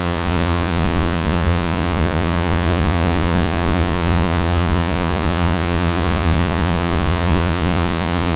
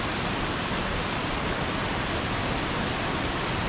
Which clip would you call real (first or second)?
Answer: second